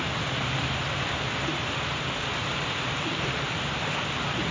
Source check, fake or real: real